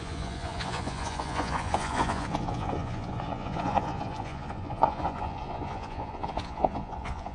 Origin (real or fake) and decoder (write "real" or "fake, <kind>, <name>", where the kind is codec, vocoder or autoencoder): fake, vocoder, Vocos